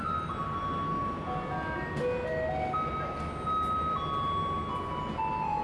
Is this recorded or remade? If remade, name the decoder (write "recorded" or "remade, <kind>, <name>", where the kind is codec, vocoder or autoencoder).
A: recorded